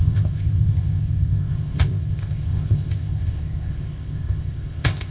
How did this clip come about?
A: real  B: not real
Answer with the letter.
B